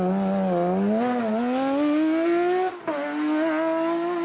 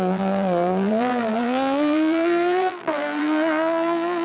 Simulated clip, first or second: second